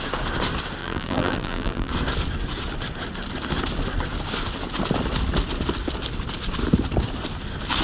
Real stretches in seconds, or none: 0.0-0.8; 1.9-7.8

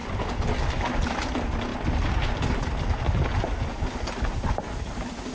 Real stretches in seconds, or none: 0.0-5.3

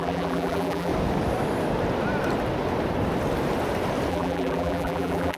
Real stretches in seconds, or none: 0.9-4.1

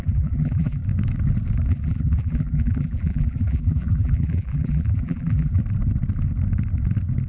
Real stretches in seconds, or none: 0.8-1.7; 5.6-7.3

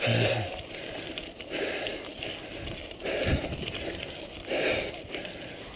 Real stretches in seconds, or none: 0.0-5.8

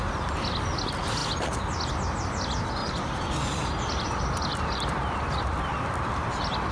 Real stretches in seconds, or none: 0.0-2.8; 5.4-6.7

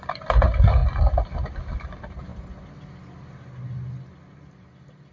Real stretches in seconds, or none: 0.8-1.5; 2.3-5.1

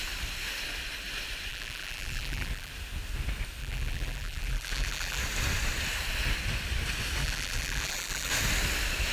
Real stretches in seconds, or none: 0.0-1.5; 2.7-3.6; 5.2-7.2; 8.3-9.1